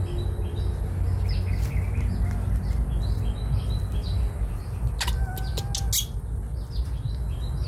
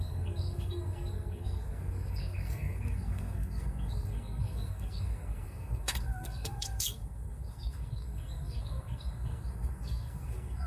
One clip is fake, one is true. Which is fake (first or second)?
second